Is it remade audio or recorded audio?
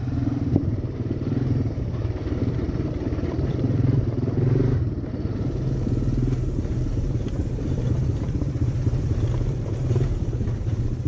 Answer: remade